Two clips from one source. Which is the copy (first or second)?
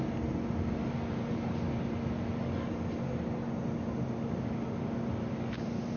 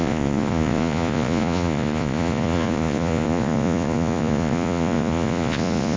second